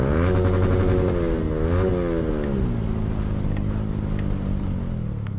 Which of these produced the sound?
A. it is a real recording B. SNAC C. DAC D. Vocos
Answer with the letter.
A